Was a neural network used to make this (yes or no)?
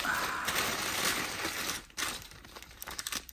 yes